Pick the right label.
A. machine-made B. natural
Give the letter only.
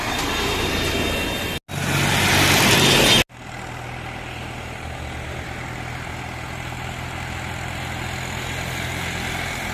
B